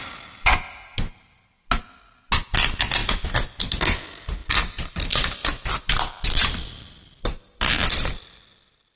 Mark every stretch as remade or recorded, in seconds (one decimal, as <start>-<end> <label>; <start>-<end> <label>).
0.0-9.0 recorded

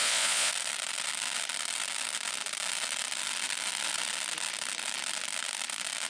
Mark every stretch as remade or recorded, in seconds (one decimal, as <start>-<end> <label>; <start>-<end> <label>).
0.0-0.5 remade; 0.5-6.1 recorded

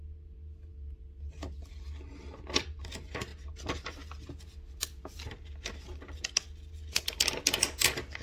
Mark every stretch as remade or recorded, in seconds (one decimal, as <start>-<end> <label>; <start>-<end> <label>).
0.0-8.2 recorded